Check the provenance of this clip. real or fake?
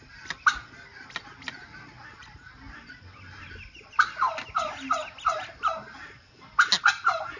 real